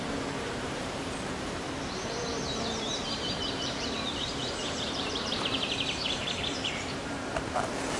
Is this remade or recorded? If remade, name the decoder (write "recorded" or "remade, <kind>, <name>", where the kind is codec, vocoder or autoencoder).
remade, vocoder, BigVGAN v2